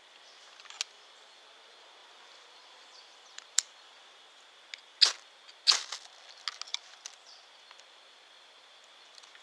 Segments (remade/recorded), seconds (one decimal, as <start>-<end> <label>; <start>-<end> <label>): 0.0-2.0 recorded; 2.0-3.6 remade; 3.6-6.7 recorded; 6.7-7.5 remade; 7.5-9.4 recorded